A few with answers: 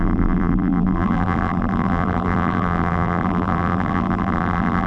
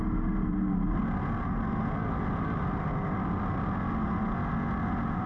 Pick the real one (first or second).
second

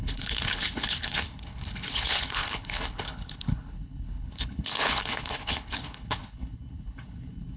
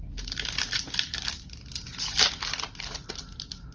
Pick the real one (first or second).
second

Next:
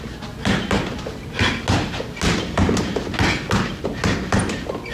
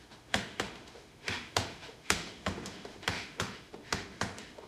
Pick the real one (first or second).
first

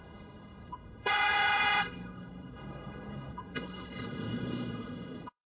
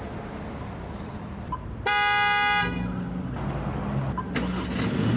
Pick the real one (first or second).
second